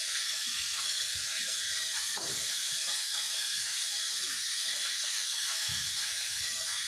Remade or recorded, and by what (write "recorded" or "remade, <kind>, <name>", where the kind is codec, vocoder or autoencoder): remade, codec, SNAC